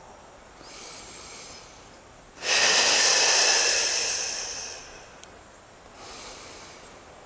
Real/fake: real